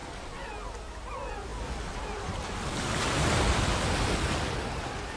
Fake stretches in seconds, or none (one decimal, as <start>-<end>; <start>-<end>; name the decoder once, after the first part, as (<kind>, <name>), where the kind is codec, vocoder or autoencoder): 0.0-0.7 (vocoder, BigVGAN v2); 1.5-4.6